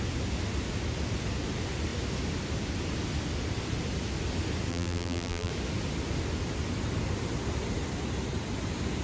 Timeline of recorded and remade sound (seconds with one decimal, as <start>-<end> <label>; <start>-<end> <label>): 0.0-4.7 recorded; 4.7-5.5 remade; 5.5-9.0 recorded